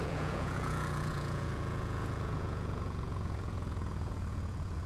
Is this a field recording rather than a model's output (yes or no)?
no